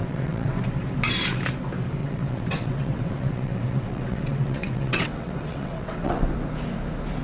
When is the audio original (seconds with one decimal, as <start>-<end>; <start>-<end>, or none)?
0.6-2.0; 6.3-7.2